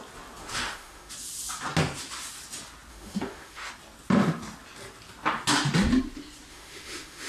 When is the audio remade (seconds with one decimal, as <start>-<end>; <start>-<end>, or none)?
0.4-1.1; 2.9-3.7; 6.5-7.3